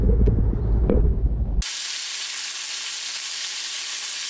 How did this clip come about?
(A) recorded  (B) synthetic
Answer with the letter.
A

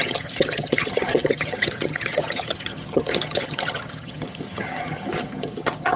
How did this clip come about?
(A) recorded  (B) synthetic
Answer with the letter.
B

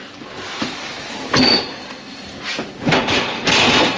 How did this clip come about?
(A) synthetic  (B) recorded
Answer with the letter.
B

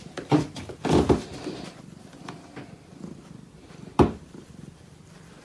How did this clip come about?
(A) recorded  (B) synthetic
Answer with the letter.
B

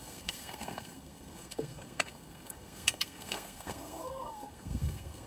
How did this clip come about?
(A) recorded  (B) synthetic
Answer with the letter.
B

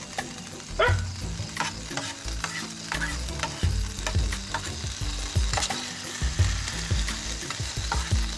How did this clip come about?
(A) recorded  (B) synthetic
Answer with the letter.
A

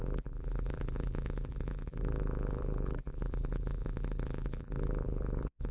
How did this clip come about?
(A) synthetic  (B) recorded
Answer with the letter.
A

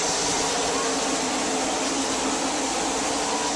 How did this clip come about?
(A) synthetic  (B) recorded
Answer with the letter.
B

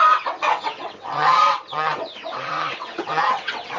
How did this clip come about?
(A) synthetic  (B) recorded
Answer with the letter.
A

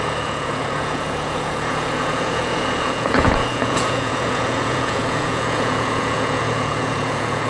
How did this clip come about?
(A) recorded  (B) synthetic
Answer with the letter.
B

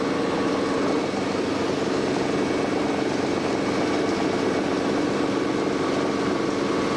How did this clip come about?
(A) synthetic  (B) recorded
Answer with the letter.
B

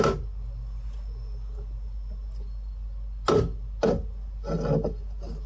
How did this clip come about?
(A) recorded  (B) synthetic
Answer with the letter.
A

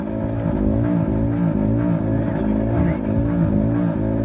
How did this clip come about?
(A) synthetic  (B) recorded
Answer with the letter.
B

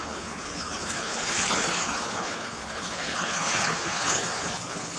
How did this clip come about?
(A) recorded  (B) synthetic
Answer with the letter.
B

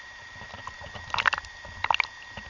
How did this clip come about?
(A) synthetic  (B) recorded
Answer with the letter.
B